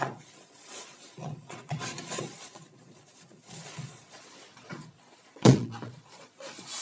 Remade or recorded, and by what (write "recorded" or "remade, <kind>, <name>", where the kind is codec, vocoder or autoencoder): remade, vocoder, Vocos